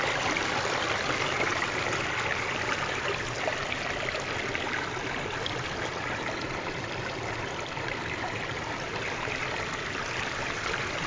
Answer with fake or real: real